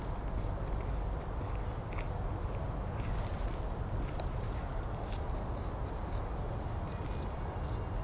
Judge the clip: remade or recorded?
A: recorded